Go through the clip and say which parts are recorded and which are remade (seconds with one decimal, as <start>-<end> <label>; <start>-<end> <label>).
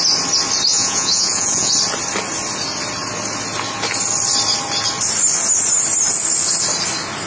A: 0.0-0.7 recorded; 0.7-1.7 remade; 1.7-7.3 recorded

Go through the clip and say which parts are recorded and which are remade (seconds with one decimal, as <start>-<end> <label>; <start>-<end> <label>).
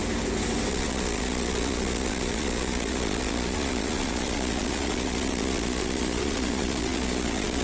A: 0.0-0.7 recorded; 0.7-7.6 remade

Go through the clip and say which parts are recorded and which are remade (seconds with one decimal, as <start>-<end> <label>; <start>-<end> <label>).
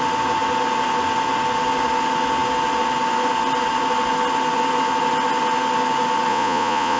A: 0.0-6.3 recorded; 6.3-7.0 remade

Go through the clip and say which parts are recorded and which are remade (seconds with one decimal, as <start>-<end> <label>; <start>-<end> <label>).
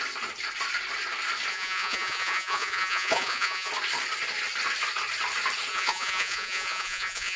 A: 0.0-1.5 recorded; 1.5-3.7 remade; 3.7-5.7 recorded; 5.7-7.4 remade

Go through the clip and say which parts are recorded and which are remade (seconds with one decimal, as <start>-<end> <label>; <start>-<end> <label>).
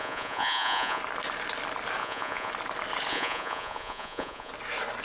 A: 0.0-1.0 remade; 1.0-2.0 recorded; 2.0-2.5 remade; 2.5-3.1 recorded; 3.1-4.5 remade; 4.5-5.0 recorded